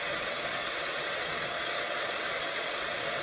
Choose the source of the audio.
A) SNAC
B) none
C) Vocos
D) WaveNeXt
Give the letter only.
D